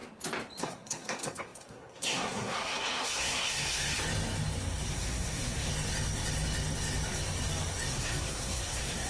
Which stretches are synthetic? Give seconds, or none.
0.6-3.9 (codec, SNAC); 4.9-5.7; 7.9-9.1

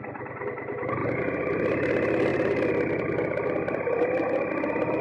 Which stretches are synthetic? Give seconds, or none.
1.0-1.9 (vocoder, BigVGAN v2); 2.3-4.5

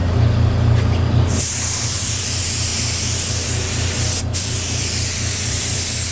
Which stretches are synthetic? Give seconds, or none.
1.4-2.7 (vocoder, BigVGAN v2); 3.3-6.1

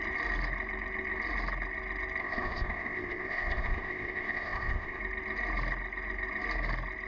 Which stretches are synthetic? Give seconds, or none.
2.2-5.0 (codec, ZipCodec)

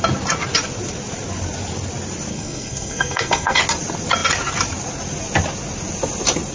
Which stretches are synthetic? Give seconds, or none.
2.3-3.6 (codec, SNAC)

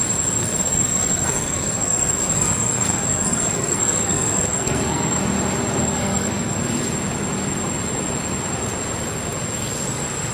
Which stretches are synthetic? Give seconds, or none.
0.4-5.2 (codec, SNAC); 5.8-6.6

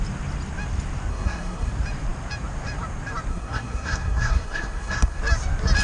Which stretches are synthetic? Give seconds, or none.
1.1-1.7 (codec, SNAC); 3.3-5.2